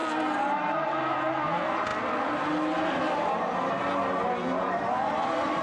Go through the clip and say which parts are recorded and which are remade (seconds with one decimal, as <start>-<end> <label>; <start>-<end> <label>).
0.0-5.6 recorded